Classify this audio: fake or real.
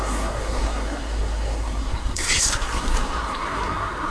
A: fake